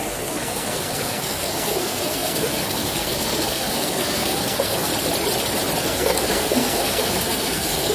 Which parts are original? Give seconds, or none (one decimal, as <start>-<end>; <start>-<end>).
4.9-5.8